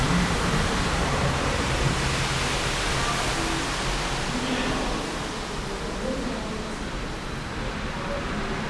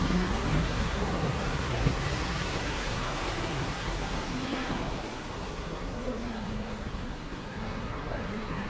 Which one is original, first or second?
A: first